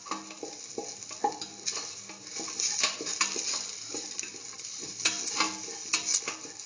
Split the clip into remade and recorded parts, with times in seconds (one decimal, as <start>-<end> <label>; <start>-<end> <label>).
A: 0.0-6.7 recorded